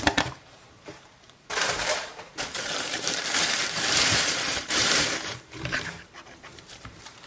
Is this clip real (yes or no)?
no